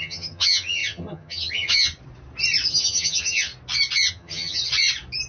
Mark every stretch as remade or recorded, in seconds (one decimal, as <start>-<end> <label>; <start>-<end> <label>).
0.0-1.9 remade; 1.9-2.7 recorded; 2.7-3.5 remade; 3.5-4.1 recorded; 4.1-4.6 remade; 4.6-5.3 recorded